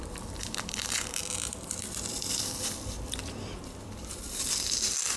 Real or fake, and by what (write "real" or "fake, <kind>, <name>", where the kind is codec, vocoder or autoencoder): fake, vocoder, BigVGAN v2